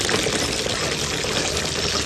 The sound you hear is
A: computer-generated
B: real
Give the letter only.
B